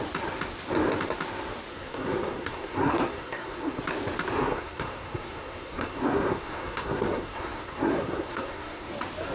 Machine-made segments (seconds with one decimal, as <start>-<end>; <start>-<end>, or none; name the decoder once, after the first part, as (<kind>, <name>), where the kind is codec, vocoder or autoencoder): 1.7-3.8 (codec, SNAC); 4.4-8.9